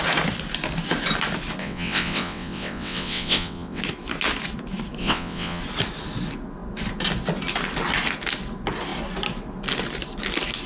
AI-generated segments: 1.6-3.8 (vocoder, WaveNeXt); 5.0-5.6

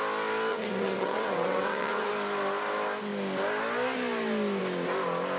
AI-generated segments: 0.5-2.1 (vocoder, WaveNeXt)

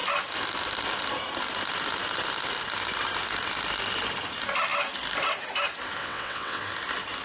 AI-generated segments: 6.0-6.6 (vocoder, WaveNeXt)

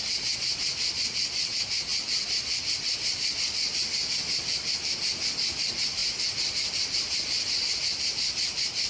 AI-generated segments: none

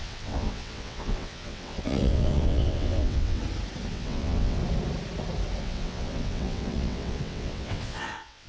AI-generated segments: 0.0-3.4 (vocoder, WaveNeXt); 3.9-4.6; 5.6-8.5

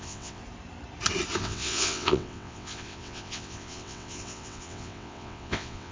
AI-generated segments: 0.0-0.4 (vocoder, WaveNeXt); 1.4-5.9